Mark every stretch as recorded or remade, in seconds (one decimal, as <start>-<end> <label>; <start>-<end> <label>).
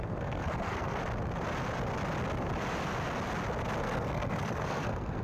0.0-1.0 remade; 1.0-3.8 recorded; 3.8-5.2 remade